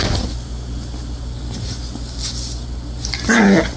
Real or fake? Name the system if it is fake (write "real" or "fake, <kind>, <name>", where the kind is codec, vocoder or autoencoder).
real